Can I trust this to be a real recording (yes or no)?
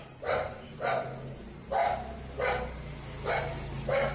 yes